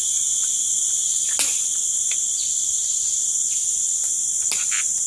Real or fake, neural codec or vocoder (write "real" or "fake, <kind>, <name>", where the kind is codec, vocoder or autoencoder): real